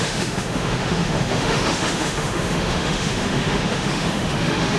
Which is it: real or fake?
fake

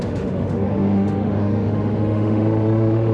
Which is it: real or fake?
fake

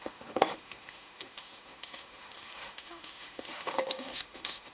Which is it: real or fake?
fake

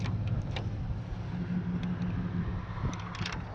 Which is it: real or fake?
real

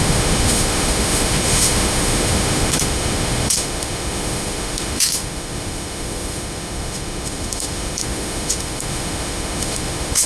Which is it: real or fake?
fake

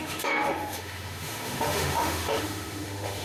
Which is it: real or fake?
fake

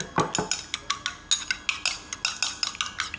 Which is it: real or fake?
real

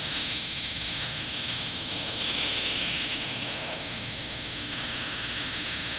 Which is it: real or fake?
fake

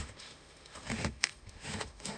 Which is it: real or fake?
fake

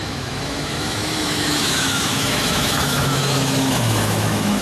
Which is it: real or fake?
fake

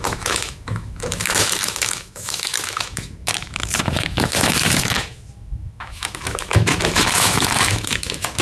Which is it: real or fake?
fake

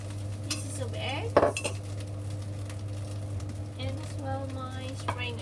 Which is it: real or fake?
real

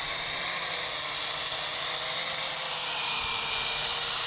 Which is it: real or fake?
real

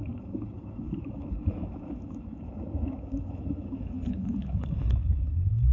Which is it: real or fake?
fake